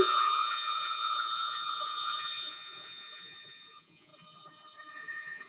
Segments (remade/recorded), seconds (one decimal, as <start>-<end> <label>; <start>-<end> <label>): 0.0-4.1 remade; 4.1-4.9 recorded; 4.9-5.5 remade